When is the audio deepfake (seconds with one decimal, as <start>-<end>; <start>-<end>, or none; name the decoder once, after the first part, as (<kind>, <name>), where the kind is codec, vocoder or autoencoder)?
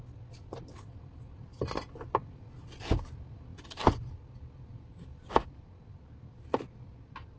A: none